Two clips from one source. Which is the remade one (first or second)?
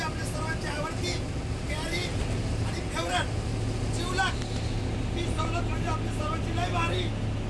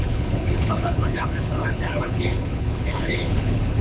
second